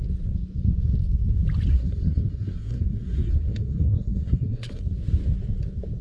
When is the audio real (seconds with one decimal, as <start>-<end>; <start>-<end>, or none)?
0.0-1.7; 4.8-6.0